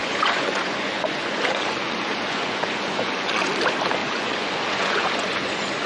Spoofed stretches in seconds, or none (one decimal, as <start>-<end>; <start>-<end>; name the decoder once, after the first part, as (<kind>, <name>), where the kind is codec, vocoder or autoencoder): 0.0-3.5 (vocoder, Vocos); 4.0-5.9